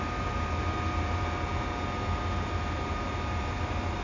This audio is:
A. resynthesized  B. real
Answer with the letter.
B